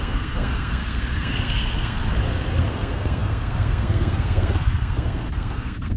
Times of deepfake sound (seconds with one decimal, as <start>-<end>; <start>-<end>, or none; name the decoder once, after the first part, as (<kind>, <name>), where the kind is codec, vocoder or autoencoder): 0.0-2.0 (codec, SNAC); 2.6-6.0